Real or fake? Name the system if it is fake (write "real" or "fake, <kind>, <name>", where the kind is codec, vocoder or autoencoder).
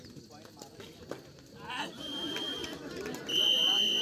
real